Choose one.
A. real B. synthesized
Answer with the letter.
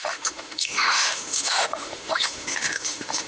B